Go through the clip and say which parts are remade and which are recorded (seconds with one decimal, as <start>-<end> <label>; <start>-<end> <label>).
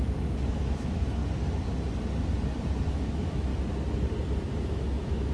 0.0-1.2 remade; 1.2-2.9 recorded; 2.9-3.5 remade; 3.5-4.6 recorded; 4.6-5.3 remade